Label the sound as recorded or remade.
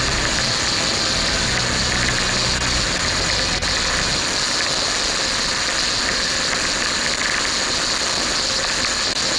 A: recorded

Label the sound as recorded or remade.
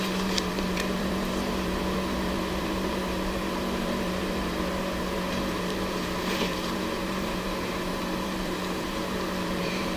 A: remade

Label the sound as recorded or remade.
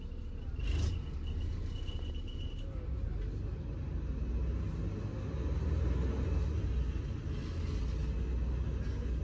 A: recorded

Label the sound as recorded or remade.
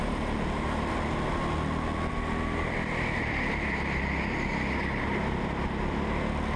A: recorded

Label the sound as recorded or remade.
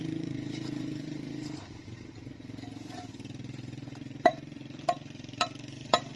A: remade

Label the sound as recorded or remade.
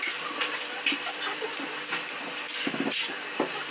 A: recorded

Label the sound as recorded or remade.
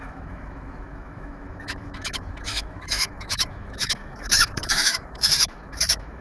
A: remade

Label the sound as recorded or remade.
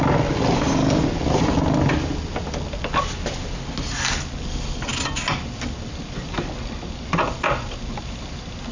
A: recorded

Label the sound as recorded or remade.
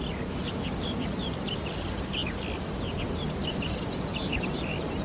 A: recorded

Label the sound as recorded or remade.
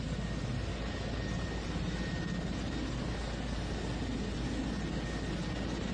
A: recorded